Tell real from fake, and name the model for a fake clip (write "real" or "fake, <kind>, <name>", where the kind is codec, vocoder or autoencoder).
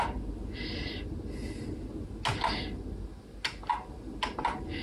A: real